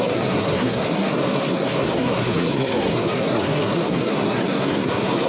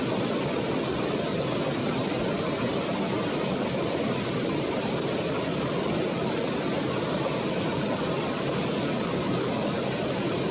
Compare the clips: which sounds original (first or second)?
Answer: second